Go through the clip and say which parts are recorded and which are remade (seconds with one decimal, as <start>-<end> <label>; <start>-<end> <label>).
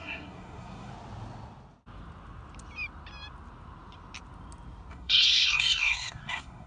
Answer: 0.0-0.9 remade; 0.9-4.9 recorded; 4.9-6.7 remade